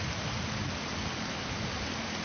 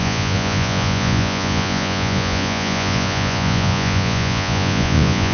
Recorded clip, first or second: first